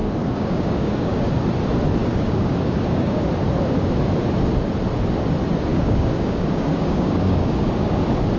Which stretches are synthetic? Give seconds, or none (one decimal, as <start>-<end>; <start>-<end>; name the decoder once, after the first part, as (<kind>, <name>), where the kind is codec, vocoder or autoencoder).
0.0-1.3 (codec, DAC); 2.0-3.2; 5.7-8.0